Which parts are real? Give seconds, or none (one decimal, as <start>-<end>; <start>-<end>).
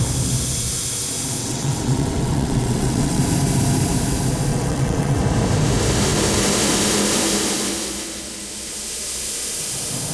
0.0-1.4; 3.2-4.5; 5.2-10.1